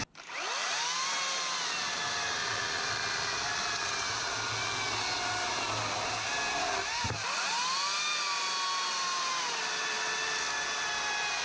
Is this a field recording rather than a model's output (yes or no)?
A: yes